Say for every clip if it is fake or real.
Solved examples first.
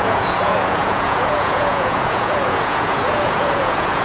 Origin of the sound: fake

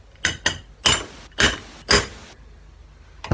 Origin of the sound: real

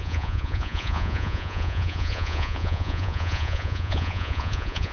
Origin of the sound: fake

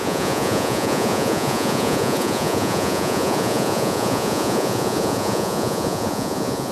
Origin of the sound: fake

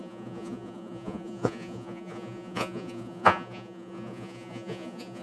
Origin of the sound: fake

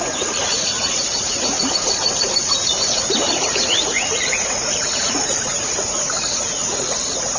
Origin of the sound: fake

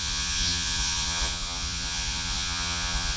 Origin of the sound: fake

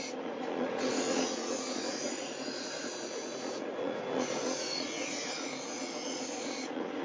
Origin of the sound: fake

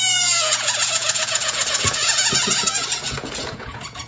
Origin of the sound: fake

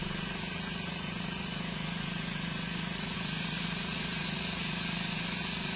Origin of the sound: fake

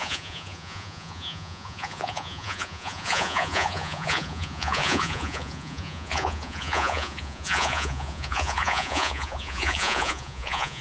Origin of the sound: fake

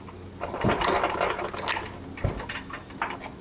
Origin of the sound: real